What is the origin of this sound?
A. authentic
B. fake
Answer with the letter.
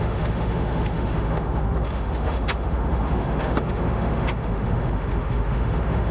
B